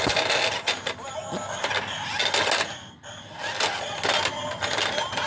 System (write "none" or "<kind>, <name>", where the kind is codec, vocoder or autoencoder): none